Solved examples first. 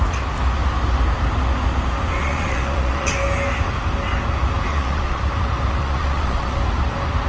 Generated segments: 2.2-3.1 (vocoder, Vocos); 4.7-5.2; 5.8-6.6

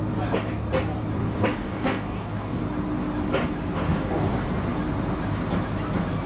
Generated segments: 1.2-2.6 (codec, DAC); 3.9-4.5